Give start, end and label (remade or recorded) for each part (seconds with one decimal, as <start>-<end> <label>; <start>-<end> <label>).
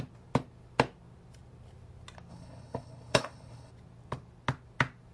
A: 0.0-2.3 recorded; 2.3-3.7 remade; 3.7-5.1 recorded